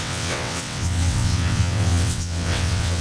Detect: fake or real fake